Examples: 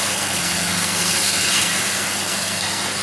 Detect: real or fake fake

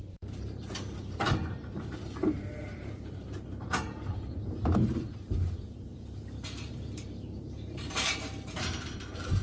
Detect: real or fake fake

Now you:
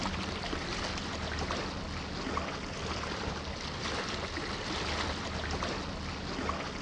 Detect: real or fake real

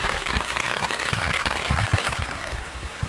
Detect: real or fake fake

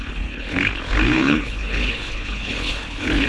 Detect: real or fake fake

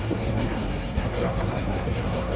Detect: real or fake fake